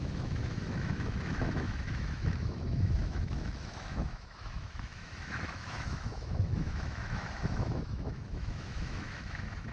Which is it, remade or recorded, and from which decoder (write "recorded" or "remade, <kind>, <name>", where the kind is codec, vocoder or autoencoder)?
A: remade, autoencoder, DAC-VAE